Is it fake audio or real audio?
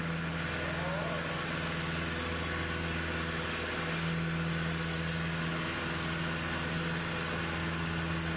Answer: real